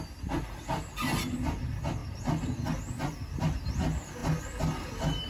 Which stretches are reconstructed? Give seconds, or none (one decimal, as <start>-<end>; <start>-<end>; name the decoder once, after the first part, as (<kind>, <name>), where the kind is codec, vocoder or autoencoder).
none